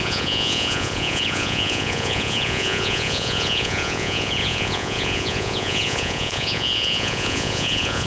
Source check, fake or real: fake